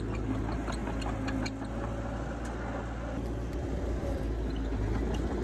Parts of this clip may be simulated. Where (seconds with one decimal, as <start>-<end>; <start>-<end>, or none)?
3.6-4.2